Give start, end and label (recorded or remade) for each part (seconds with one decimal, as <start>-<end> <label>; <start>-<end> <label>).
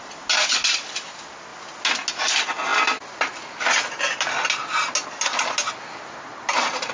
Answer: 0.0-6.9 recorded